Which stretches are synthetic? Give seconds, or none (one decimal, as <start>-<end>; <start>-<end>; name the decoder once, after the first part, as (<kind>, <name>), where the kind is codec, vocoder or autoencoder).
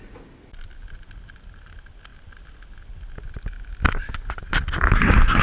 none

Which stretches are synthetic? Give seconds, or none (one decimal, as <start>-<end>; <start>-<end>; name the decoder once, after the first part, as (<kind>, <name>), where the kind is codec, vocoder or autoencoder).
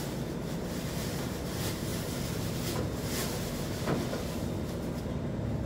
none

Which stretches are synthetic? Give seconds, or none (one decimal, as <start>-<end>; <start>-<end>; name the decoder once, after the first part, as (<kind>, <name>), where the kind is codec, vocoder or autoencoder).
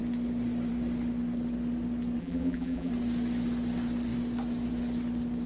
2.2-2.9 (vocoder, BigVGAN v2)